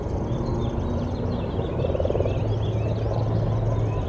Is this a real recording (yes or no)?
yes